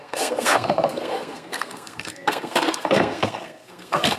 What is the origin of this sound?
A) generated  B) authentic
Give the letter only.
A